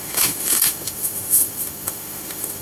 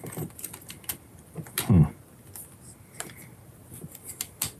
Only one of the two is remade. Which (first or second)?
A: first